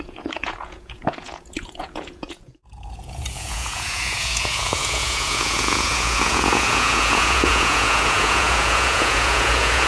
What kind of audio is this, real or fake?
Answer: fake